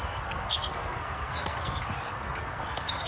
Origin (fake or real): fake